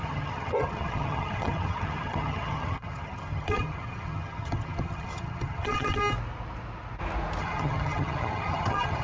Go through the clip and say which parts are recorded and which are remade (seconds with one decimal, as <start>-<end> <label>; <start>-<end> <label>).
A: 0.0-6.0 remade; 6.0-7.4 recorded; 7.4-9.0 remade